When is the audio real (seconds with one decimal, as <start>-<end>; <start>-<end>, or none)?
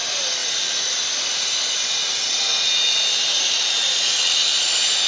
none